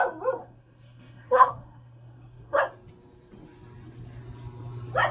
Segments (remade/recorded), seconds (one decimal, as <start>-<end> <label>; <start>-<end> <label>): 0.0-0.4 recorded; 0.4-2.6 remade; 2.6-5.1 recorded